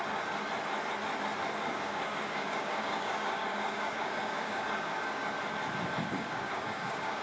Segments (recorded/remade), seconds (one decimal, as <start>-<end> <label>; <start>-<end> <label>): 0.0-1.6 recorded; 1.6-5.3 remade; 5.3-6.1 recorded; 6.1-7.2 remade